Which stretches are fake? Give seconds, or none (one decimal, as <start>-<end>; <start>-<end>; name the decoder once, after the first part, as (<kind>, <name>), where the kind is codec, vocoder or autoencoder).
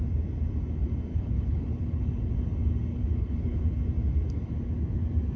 1.1-2.3 (codec, HILCodec); 2.9-3.8